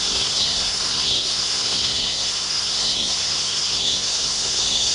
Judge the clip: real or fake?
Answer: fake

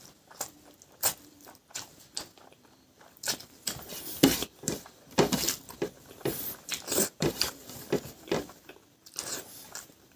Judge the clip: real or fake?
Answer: fake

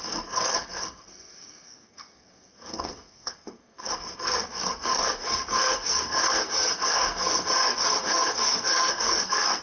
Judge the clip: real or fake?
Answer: fake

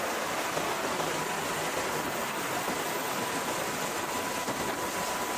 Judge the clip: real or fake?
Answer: real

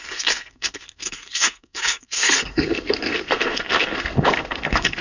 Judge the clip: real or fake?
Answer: fake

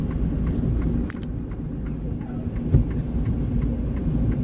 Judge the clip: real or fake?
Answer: real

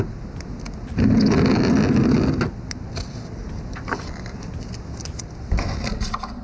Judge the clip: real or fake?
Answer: real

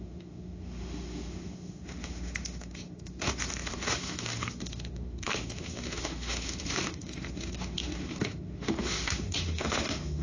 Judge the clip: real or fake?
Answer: fake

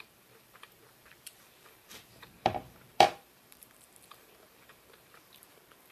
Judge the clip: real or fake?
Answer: fake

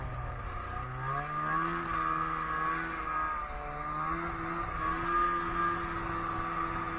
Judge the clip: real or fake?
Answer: real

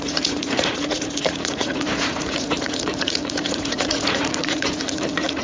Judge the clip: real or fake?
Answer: fake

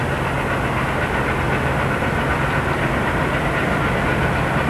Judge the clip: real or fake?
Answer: real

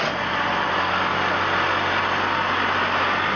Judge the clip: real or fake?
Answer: real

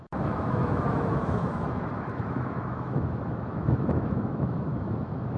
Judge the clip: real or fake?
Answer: fake